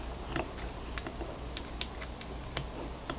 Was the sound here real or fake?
real